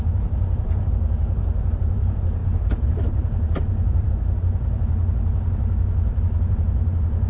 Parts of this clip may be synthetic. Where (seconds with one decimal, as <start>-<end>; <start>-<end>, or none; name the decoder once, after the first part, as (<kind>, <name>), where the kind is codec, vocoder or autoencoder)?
2.4-4.1 (vocoder, BigVGAN v2)

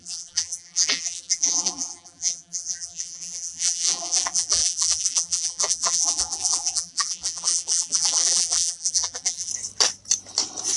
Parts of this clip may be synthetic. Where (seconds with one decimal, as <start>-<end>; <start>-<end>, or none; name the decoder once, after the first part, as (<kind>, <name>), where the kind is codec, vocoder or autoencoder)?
0.0-9.5 (vocoder, BigVGAN v2)

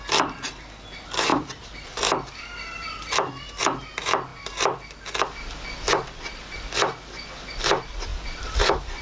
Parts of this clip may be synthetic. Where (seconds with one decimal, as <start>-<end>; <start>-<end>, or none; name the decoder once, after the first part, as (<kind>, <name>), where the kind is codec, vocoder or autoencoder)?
1.3-3.6 (vocoder, BigVGAN v2)

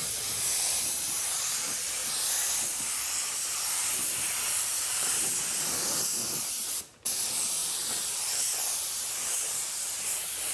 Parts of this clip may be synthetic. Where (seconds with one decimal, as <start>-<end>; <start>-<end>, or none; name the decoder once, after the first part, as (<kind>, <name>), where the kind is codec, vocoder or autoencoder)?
0.0-2.0 (vocoder, BigVGAN v2); 4.6-5.3; 6.4-10.5

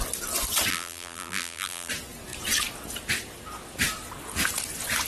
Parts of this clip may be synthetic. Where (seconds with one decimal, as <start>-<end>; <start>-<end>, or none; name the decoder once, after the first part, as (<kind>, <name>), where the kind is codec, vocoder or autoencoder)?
0.7-1.9 (vocoder, BigVGAN v2)

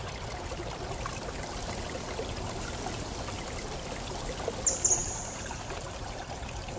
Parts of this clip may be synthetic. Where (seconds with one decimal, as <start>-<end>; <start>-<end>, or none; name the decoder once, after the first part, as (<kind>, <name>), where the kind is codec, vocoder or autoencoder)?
5.0-6.8 (vocoder, BigVGAN v2)

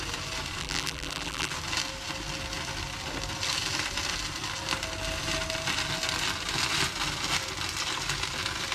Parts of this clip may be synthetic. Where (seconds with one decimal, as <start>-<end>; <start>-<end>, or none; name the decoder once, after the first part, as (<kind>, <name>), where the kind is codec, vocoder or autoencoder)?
0.6-1.5 (vocoder, BigVGAN v2)